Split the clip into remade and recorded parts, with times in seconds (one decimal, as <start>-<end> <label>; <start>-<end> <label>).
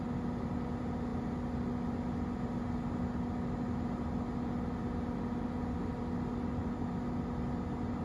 0.0-8.0 recorded